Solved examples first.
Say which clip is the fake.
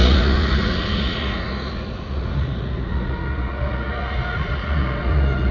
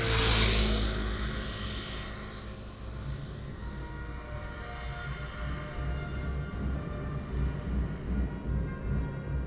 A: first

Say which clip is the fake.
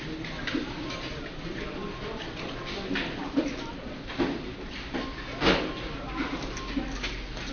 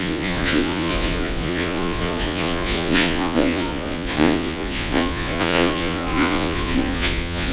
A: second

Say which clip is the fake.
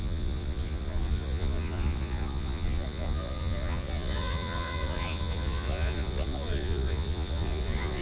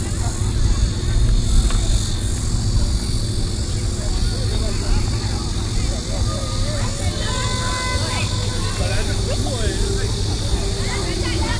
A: first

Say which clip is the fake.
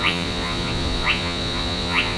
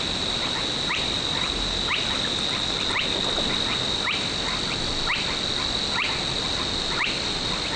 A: first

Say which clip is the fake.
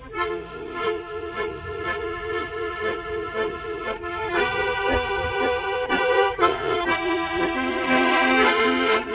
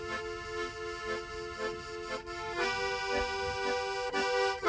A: first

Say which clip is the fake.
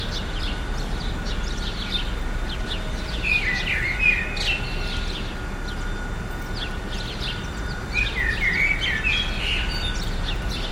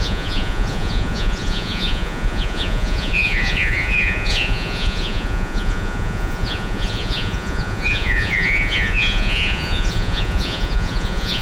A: second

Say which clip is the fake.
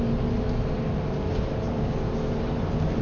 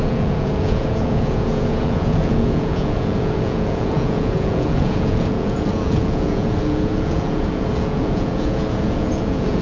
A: second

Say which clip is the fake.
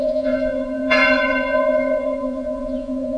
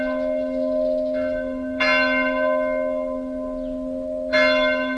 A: first